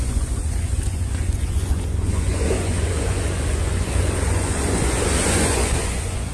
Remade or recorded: remade